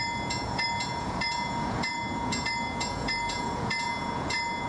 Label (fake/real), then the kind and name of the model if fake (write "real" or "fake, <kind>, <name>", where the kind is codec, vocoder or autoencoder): fake, vocoder, Vocos